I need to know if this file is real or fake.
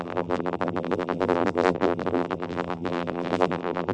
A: fake